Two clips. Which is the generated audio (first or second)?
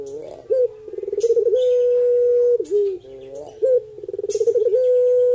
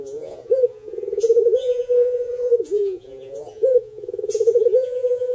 second